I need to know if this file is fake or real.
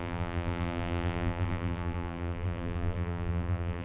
fake